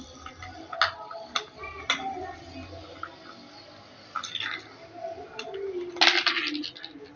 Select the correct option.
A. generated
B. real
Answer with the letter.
B